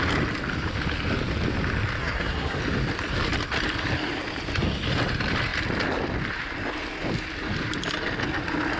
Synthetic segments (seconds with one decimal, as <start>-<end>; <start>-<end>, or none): 2.0-2.6